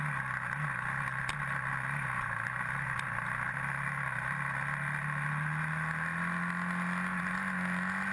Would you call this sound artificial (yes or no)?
no